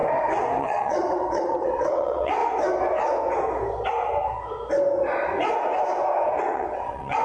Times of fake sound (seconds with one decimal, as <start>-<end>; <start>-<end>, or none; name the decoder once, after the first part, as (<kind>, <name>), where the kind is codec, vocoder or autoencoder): 0.6-2.4 (vocoder, WaveNeXt); 6.4-7.2